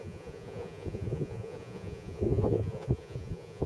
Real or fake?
fake